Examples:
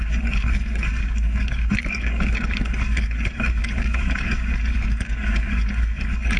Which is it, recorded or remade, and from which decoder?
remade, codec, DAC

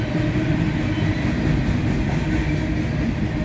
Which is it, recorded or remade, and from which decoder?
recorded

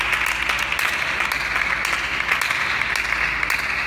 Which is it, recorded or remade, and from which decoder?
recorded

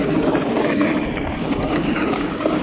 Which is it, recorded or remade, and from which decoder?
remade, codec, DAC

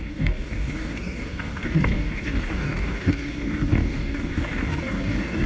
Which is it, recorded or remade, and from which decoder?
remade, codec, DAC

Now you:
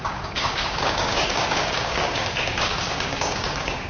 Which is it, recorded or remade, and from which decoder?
remade, codec, DAC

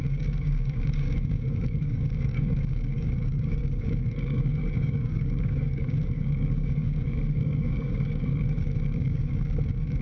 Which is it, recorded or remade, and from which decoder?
remade, codec, DAC